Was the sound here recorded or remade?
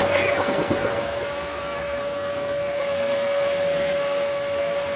remade